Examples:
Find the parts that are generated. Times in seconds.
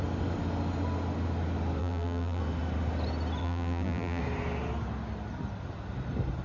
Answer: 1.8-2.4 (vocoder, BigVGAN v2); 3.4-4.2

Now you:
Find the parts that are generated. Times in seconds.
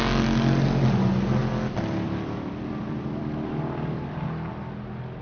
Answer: 1.4-4.5 (vocoder, BigVGAN v2)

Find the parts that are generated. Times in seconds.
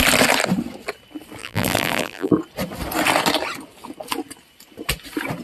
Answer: 1.4-2.3 (vocoder, BigVGAN v2)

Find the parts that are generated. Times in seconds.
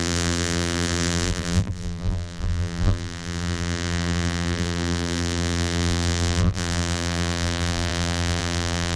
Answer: 0.0-9.0 (vocoder, BigVGAN v2)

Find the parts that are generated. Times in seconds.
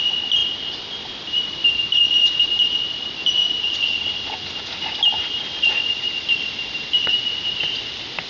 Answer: none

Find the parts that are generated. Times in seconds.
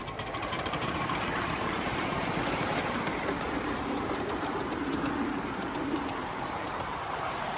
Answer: 0.0-7.6 (vocoder, BigVGAN v2)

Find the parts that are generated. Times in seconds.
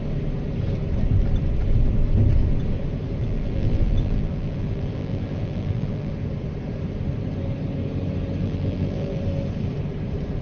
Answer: 3.2-6.1 (vocoder, BigVGAN v2); 8.4-9.2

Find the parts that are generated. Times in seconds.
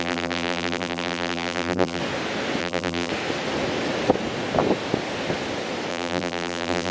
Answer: 0.0-2.0 (vocoder, BigVGAN v2); 2.6-3.1; 5.9-6.9